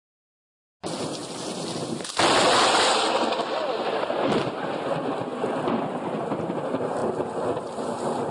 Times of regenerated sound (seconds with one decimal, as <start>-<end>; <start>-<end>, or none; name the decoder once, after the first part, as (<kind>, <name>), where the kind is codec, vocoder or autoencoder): none